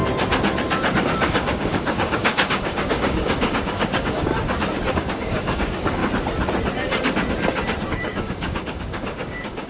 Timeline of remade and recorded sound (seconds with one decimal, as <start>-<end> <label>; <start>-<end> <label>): 0.0-1.0 recorded; 1.0-4.3 remade; 4.3-4.9 recorded; 4.9-6.0 remade; 6.0-7.9 recorded; 7.9-9.7 remade